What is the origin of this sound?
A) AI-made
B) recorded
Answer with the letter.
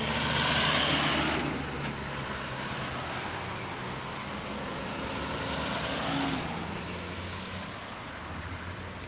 B